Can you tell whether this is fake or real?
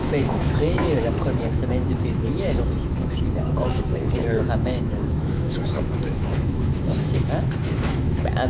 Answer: fake